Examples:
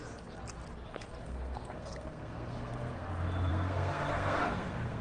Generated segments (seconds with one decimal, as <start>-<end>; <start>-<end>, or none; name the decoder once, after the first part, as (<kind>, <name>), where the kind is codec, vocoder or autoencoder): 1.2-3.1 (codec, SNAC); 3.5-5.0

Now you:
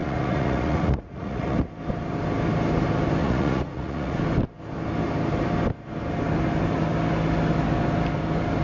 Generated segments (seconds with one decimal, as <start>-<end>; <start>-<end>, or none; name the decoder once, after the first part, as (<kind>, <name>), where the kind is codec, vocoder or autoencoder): 0.0-1.7 (vocoder, Vocos); 3.2-4.2

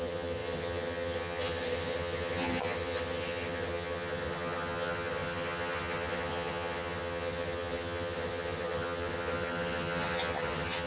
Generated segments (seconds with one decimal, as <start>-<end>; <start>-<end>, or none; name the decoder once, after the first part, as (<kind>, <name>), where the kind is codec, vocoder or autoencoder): 0.0-10.9 (vocoder, HiFi-GAN)

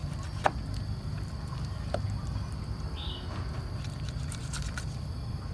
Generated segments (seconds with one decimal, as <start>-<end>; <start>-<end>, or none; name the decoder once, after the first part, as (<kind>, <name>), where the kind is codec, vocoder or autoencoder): none

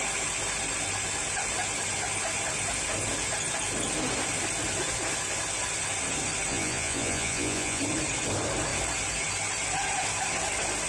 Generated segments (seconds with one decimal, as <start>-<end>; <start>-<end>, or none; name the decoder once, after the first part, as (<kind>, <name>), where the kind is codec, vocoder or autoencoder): 6.5-7.8 (vocoder, Vocos)

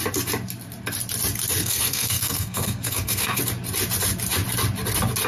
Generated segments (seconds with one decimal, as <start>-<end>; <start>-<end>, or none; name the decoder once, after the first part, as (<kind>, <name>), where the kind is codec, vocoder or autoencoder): 1.6-3.4 (codec, SNAC)

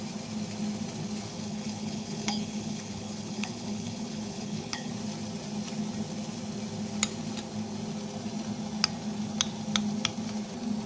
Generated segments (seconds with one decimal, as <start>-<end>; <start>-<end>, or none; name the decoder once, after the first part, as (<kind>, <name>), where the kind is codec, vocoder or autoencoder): 1.3-4.9 (codec, HILCodec)

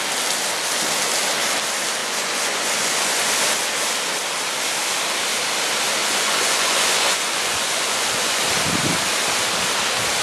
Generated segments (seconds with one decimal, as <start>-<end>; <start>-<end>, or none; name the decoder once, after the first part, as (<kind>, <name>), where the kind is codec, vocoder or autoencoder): 2.0-3.3 (vocoder, Vocos); 6.0-8.4